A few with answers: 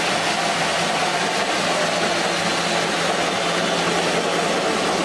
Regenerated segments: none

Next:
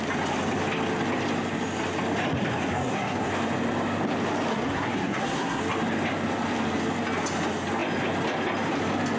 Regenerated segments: 2.7-3.3 (codec, SNAC); 4.5-5.6

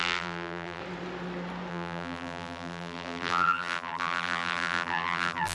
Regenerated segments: 0.0-0.8 (vocoder, BigVGAN v2); 1.7-5.5

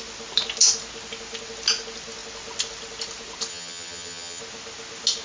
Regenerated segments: 3.5-4.4 (vocoder, HiFi-GAN)

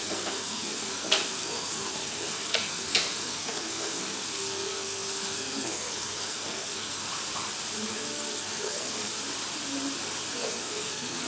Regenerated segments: 0.0-7.1 (codec, SNAC); 7.9-9.1; 10.3-11.3